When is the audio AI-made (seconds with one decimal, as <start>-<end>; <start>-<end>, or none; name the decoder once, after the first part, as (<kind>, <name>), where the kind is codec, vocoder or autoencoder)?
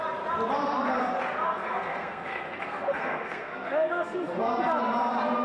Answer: 1.4-4.6 (codec, SNAC)